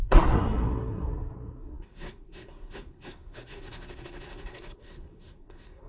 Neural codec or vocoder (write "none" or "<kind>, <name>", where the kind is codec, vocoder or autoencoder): codec, SNAC